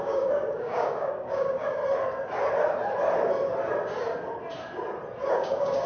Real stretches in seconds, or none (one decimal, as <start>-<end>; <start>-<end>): 1.8-5.3